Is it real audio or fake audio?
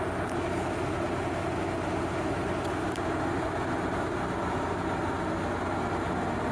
real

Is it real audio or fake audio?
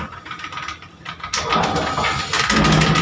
real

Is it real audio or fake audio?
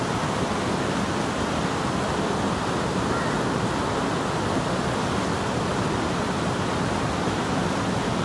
real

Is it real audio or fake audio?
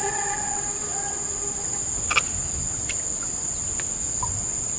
real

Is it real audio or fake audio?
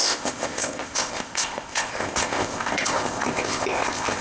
fake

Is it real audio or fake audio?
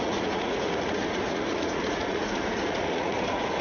fake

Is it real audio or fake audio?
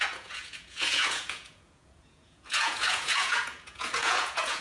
fake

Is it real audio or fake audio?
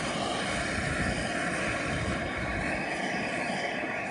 real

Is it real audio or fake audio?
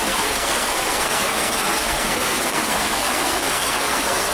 fake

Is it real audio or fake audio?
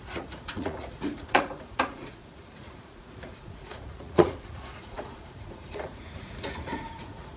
fake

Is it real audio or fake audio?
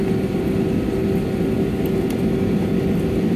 real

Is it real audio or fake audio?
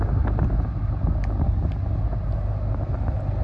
real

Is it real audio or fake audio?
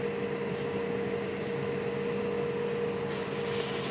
real